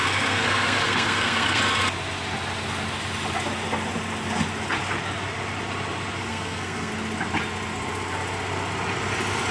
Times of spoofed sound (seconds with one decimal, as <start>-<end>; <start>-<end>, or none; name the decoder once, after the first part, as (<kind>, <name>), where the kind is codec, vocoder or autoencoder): 0.0-1.6 (codec, SNAC); 6.3-6.9